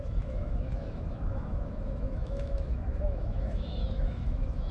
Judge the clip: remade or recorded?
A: remade